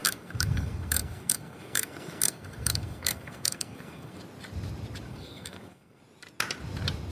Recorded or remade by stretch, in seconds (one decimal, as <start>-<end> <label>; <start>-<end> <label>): 0.0-4.2 remade; 4.2-5.1 recorded; 5.1-6.0 remade; 6.0-7.1 recorded